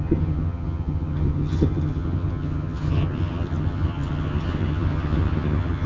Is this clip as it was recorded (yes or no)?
no